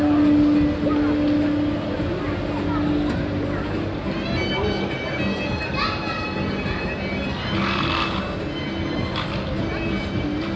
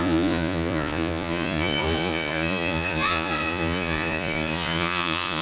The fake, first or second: second